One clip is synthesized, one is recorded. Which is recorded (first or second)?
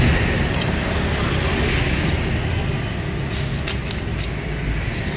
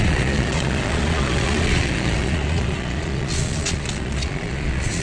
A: first